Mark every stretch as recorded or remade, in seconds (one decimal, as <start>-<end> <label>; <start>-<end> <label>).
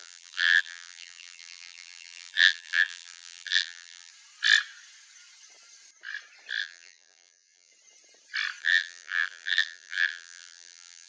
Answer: 0.0-4.1 remade; 4.1-6.6 recorded; 6.6-7.7 remade; 7.7-8.6 recorded; 8.6-11.1 remade